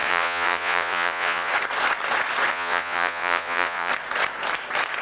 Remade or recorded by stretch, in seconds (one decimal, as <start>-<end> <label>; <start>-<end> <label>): 0.0-1.5 remade; 1.5-2.5 recorded; 2.5-3.9 remade; 3.9-5.0 recorded